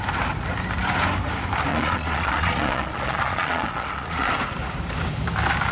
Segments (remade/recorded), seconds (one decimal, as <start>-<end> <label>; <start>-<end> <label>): 0.0-1.7 recorded; 1.7-4.3 remade; 4.3-5.7 recorded